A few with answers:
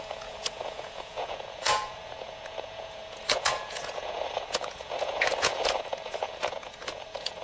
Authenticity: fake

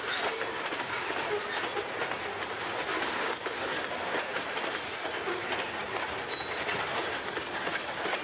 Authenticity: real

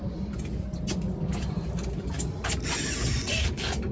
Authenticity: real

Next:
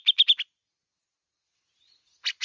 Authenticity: real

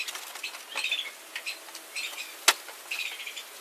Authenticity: real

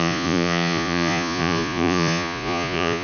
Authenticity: fake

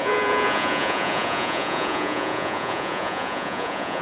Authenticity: fake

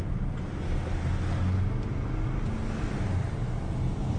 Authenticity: real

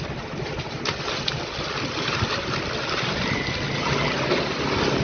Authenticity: real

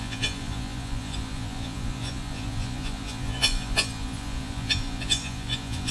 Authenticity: fake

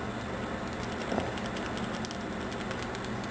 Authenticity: real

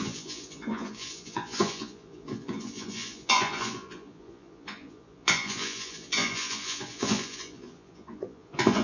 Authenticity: fake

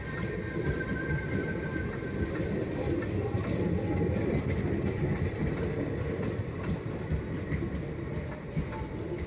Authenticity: real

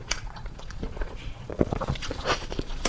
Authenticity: fake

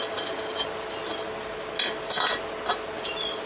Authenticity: real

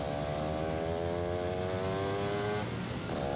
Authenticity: real